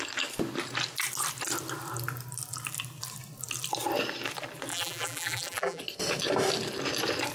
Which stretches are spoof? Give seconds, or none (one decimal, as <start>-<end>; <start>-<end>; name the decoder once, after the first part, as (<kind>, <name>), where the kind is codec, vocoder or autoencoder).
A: 4.7-5.8 (vocoder, BigVGAN v2)